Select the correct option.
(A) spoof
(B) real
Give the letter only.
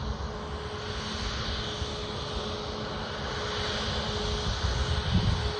B